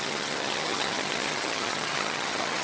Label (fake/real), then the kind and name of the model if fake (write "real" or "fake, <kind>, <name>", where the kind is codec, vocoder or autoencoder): fake, vocoder, HiFi-GAN